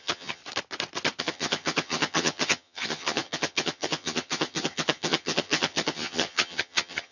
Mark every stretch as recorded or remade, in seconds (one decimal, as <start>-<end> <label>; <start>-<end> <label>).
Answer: 0.0-0.4 remade; 0.4-1.2 recorded; 1.2-7.1 remade